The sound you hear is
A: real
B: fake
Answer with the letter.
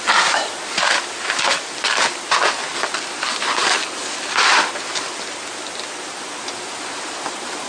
A